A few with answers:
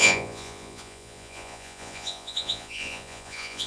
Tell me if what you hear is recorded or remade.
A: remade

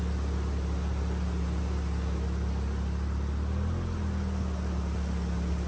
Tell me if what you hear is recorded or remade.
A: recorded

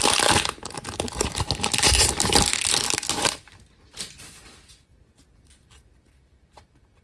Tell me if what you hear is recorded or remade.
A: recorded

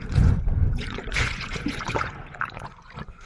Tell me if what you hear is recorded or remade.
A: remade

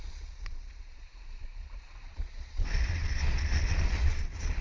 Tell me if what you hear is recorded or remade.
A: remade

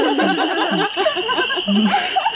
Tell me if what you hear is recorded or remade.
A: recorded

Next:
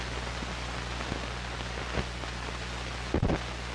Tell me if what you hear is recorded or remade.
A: recorded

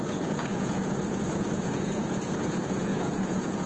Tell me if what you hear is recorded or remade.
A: remade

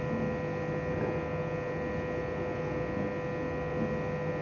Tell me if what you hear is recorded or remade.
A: recorded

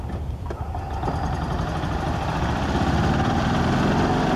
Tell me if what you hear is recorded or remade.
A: recorded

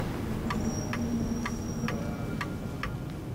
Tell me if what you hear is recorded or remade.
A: recorded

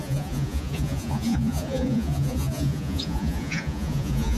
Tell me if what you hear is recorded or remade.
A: remade